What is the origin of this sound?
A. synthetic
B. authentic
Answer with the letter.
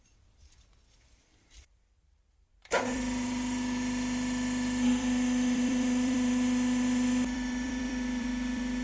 A